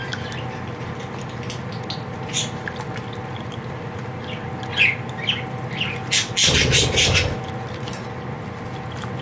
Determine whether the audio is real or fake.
real